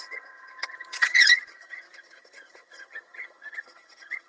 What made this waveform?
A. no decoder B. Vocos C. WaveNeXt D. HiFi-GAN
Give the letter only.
D